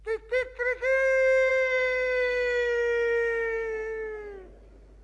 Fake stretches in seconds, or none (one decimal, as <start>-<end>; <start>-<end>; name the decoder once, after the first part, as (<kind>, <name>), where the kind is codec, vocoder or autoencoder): 1.5-4.5 (autoencoder, DAC-VAE)